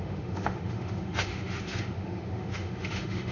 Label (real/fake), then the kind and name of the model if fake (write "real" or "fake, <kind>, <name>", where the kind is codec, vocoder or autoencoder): fake, autoencoder, DAC-VAE